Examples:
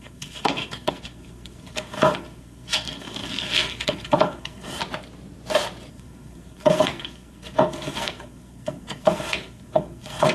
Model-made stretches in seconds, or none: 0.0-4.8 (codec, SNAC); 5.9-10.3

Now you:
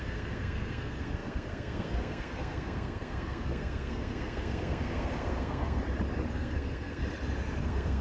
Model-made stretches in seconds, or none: 0.0-5.8 (codec, SNAC); 6.3-7.0; 7.6-8.0

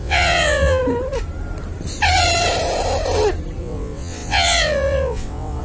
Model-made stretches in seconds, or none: 0.0-0.8 (vocoder, WaveNeXt); 3.6-5.6

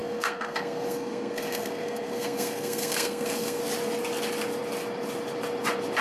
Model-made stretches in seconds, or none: 0.0-3.6 (codec, SNAC)

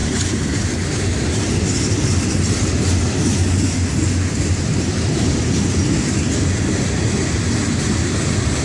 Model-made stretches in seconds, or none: 0.0-0.9 (vocoder, BigVGAN v2)

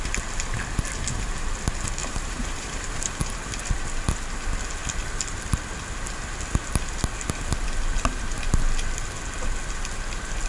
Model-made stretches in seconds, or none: 2.0-3.2 (vocoder, BigVGAN v2)

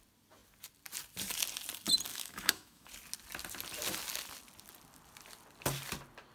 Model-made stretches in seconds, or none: 2.1-2.9 (autoencoder, DAC-VAE)

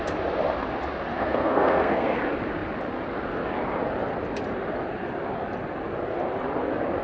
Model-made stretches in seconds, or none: 1.2-2.2 (codec, SNAC)